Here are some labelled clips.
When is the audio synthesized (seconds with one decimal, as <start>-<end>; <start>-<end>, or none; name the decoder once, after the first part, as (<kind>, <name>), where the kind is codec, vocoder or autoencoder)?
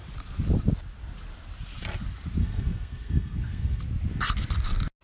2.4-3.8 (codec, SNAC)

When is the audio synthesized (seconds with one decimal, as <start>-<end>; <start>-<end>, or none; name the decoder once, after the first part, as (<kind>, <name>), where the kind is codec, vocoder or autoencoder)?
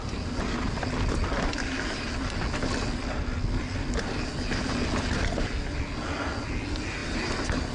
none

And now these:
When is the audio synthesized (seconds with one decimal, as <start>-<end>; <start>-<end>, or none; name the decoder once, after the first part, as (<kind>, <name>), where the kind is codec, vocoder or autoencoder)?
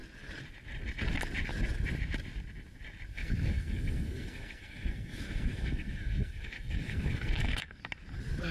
3.1-7.8 (codec, SNAC)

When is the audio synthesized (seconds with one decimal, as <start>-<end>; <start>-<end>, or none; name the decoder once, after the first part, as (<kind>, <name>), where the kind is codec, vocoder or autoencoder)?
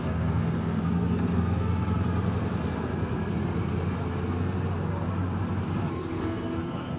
0.0-1.7 (codec, SNAC); 5.9-7.0